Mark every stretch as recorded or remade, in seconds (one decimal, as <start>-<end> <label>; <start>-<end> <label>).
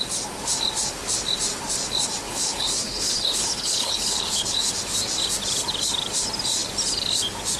0.0-2.3 recorded; 2.3-4.7 remade; 4.7-7.6 recorded